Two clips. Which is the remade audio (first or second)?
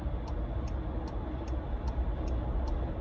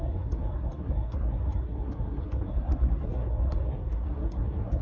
second